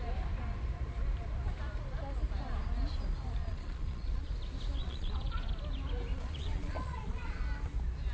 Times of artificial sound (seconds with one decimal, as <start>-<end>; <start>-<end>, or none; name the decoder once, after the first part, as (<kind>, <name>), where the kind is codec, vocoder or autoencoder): 3.4-4.3 (vocoder, Vocos); 4.8-5.5; 6.1-7.4